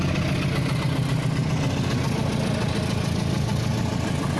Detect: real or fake real